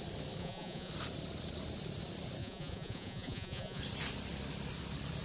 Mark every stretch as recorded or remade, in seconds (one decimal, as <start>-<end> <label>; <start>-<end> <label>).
0.0-0.4 recorded; 0.4-0.9 remade; 0.9-2.4 recorded; 2.4-3.8 remade; 3.8-5.2 recorded